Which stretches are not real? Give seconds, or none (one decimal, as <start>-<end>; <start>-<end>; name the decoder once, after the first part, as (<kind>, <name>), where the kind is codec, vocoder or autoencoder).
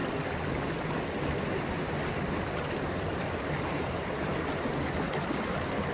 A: 3.1-4.7 (vocoder, BigVGAN v2)